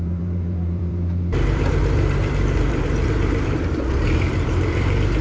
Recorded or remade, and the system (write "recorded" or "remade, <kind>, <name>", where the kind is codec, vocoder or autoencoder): remade, vocoder, BigVGAN v2